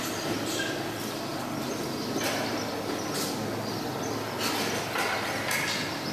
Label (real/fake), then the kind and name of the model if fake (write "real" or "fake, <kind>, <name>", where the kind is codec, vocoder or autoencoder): real